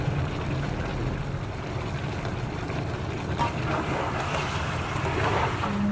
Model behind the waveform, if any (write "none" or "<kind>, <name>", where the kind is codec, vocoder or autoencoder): none